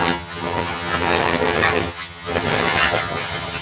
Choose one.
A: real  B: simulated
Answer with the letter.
B